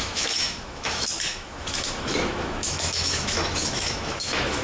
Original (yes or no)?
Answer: no